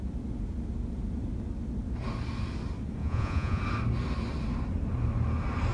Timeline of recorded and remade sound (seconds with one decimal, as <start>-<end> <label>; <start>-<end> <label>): 0.0-3.0 recorded; 3.0-3.6 remade; 3.6-5.7 recorded